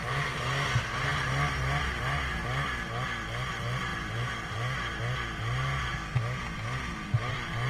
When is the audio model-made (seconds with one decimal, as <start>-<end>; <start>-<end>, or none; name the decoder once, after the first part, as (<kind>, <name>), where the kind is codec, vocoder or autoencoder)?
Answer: 3.9-5.0 (vocoder, BigVGAN v2)